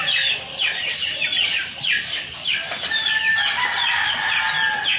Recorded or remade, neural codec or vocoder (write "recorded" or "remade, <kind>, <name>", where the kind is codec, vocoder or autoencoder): remade, vocoder, BigVGAN v2